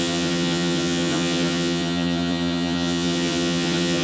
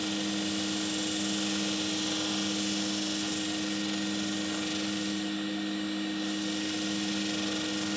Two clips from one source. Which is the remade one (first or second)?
first